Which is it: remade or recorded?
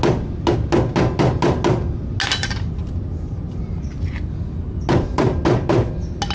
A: recorded